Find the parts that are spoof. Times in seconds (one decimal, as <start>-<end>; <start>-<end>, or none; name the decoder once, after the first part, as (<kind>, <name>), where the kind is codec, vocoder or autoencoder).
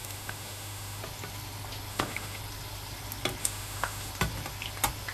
0.0-1.0 (autoencoder, DAC-VAE); 1.9-2.4; 3.4-4.1